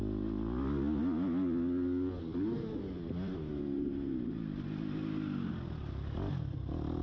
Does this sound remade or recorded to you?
recorded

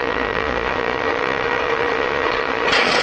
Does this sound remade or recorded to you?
remade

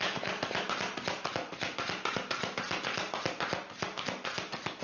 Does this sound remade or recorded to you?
recorded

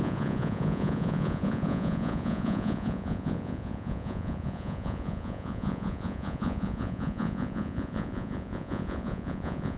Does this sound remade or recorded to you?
remade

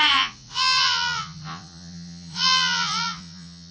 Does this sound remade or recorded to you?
remade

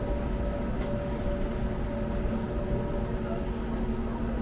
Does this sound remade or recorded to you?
recorded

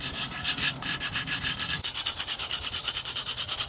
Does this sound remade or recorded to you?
recorded